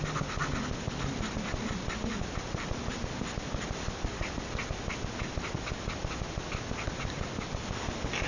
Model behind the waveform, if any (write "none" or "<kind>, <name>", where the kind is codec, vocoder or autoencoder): none